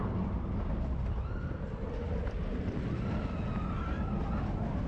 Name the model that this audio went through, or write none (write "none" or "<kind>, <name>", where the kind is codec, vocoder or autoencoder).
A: none